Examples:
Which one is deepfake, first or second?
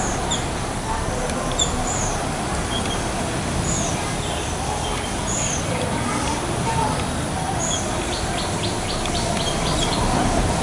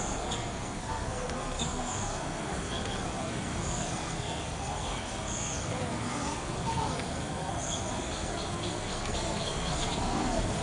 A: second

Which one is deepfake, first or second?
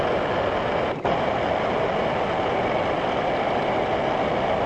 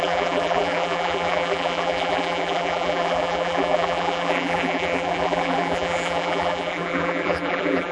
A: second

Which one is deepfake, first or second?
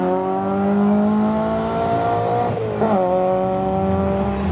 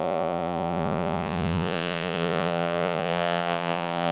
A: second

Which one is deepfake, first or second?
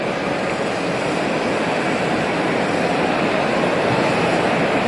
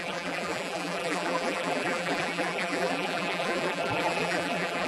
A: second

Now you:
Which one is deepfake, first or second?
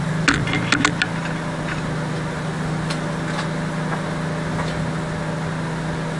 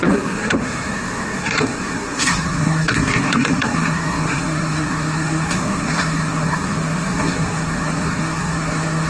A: second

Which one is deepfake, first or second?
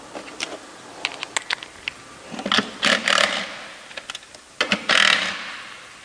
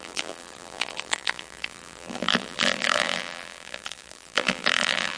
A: second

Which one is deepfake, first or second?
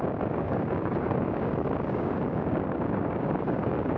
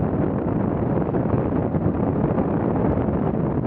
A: first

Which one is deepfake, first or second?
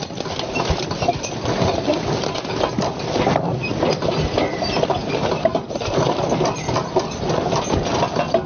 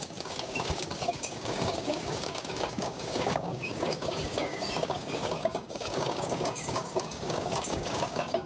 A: second